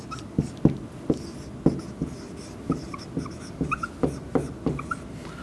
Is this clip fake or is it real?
real